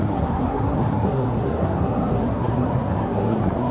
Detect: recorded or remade remade